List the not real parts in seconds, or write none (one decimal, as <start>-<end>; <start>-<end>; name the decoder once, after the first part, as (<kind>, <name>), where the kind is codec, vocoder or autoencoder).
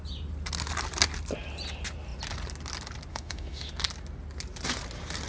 3.1-3.7 (autoencoder, DAC-VAE)